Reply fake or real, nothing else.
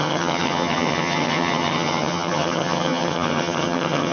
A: fake